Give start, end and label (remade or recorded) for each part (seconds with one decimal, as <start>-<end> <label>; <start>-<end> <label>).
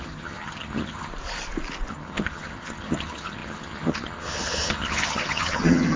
0.0-1.1 remade; 1.1-1.9 recorded; 1.9-6.0 remade